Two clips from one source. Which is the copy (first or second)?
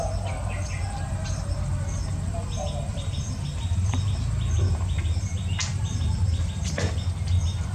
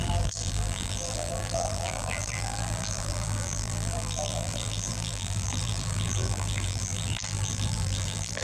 second